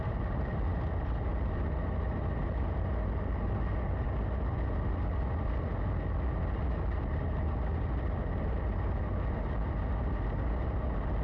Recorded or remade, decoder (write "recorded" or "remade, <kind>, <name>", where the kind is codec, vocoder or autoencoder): recorded